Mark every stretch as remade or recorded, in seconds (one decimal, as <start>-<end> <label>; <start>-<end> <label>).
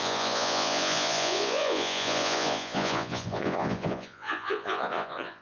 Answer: 0.0-5.4 remade